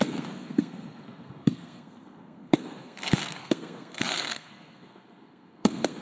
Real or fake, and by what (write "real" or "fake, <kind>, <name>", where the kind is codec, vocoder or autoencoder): fake, codec, SNAC